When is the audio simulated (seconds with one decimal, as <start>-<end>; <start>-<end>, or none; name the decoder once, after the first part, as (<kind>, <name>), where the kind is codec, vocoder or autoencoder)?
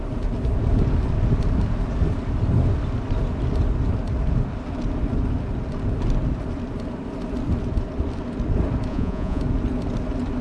8.9-9.4 (vocoder, Vocos)